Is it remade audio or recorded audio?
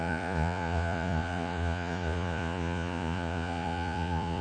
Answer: remade